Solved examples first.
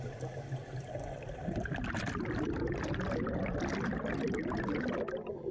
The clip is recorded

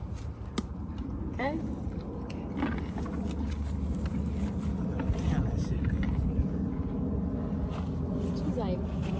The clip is recorded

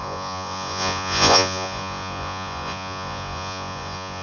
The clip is remade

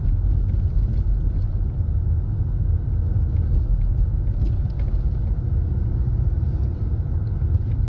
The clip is recorded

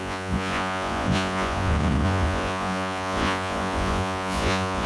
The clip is remade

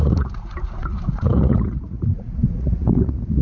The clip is remade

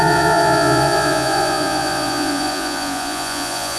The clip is remade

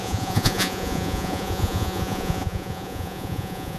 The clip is remade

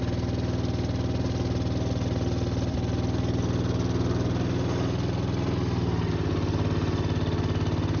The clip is recorded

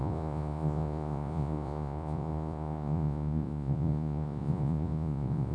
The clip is remade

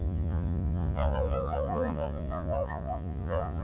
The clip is remade